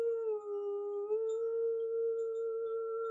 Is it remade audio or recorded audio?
recorded